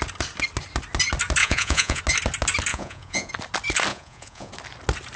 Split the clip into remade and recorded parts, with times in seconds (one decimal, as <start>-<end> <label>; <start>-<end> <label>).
0.0-1.4 recorded; 1.4-2.0 remade; 2.0-2.7 recorded; 2.7-3.3 remade; 3.3-3.9 recorded; 3.9-4.5 remade; 4.5-5.2 recorded